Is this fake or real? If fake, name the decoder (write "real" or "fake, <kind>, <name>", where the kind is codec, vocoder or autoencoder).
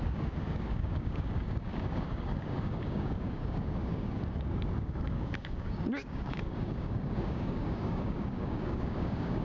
fake, codec, DAC